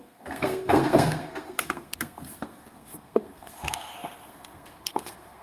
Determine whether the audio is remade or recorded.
remade